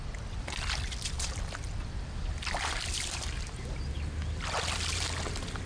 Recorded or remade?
recorded